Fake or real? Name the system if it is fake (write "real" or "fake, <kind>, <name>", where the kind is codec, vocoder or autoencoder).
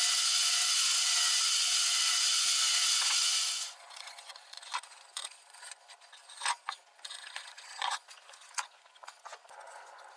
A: fake, vocoder, Vocos